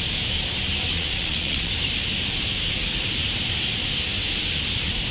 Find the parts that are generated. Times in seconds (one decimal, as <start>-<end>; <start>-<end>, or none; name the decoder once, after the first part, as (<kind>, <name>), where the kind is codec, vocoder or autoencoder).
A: 0.9-1.7 (vocoder, Vocos)